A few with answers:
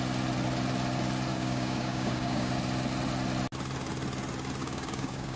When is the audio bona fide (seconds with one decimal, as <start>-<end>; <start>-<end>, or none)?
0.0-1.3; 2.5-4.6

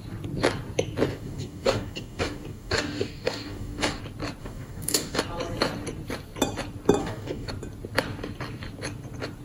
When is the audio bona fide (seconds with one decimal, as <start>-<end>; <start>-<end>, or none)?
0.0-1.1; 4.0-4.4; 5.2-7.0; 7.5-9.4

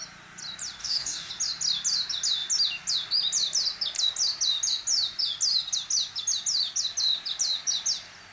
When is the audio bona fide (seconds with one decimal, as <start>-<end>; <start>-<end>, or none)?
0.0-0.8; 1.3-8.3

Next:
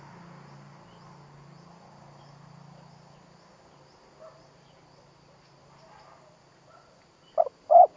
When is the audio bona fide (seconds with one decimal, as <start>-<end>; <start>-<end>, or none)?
0.0-8.0

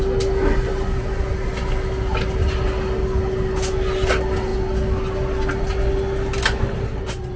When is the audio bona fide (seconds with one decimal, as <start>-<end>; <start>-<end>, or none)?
0.0-7.4

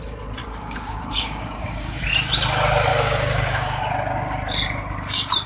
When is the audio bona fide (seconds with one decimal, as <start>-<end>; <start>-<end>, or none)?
0.0-0.4; 2.0-2.9; 3.8-5.5

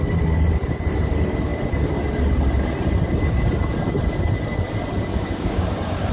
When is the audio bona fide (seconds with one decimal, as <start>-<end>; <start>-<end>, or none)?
0.0-5.1